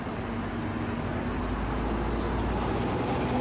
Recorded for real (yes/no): yes